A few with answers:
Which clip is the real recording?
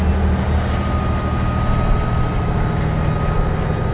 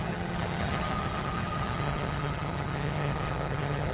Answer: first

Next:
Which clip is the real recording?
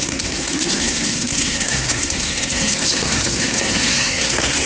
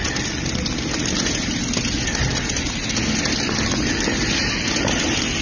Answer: second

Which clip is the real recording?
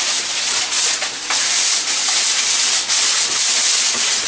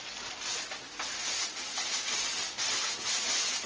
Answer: second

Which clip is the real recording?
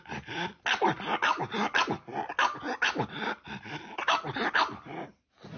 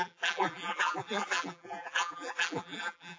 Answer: first